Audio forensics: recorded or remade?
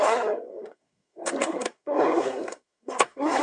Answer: remade